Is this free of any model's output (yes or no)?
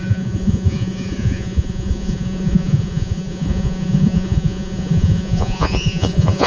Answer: no